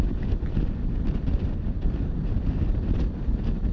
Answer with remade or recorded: recorded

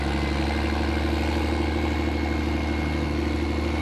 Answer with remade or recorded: recorded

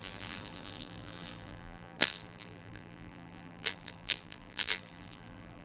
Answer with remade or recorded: remade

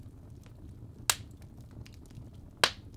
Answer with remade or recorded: recorded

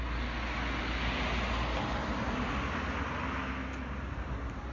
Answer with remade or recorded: recorded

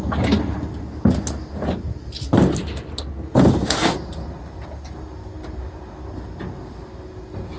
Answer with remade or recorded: recorded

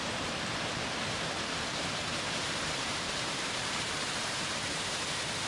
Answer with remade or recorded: remade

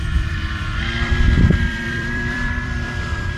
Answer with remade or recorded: remade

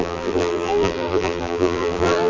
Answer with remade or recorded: remade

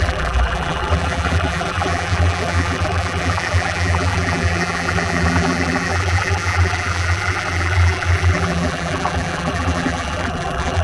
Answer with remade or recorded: remade